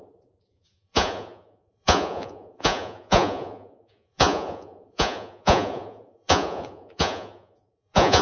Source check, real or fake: fake